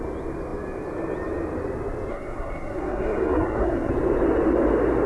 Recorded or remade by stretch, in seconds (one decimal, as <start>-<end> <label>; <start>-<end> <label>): 0.0-2.1 recorded; 2.1-3.9 remade; 3.9-5.1 recorded